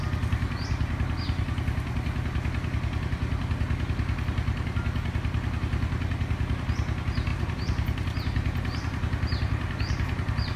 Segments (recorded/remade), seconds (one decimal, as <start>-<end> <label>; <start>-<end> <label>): 0.0-7.3 recorded; 7.3-10.6 remade